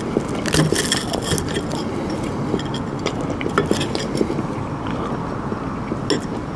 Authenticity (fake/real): real